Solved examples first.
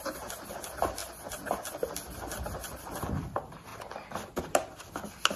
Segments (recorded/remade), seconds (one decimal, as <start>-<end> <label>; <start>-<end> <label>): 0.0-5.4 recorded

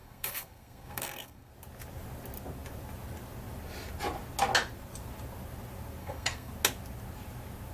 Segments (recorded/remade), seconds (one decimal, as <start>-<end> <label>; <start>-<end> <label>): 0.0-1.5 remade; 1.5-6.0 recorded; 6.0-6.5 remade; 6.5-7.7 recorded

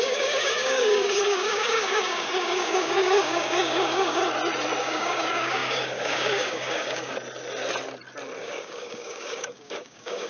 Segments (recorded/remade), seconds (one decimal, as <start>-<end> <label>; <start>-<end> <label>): 0.0-4.2 remade; 4.2-4.8 recorded; 4.8-7.1 remade; 7.1-8.4 recorded; 8.4-10.3 remade

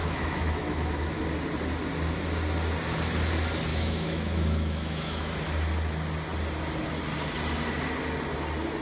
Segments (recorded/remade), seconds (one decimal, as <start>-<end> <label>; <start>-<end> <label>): 0.0-1.2 remade; 1.2-3.7 recorded; 3.7-5.3 remade; 5.3-8.8 recorded